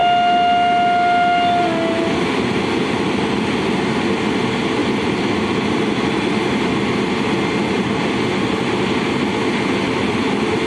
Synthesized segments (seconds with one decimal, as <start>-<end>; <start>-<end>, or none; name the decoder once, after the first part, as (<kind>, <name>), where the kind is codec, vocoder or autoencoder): none